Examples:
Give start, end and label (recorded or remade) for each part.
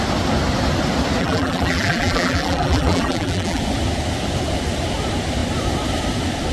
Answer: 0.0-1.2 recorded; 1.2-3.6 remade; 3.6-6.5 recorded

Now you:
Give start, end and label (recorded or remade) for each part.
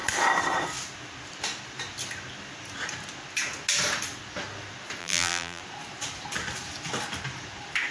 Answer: 0.0-5.0 recorded; 5.0-5.6 remade; 5.6-7.9 recorded